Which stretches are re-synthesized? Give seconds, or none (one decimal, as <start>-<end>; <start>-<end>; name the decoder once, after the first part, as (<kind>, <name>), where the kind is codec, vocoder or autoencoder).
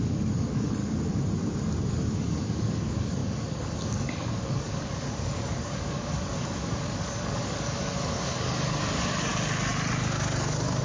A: 0.0-0.8 (codec, DAC); 1.9-9.3; 9.9-10.8